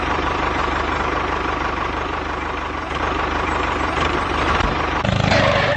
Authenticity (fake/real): fake